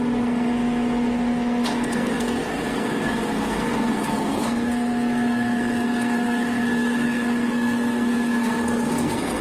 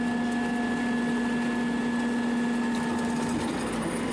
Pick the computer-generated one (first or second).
first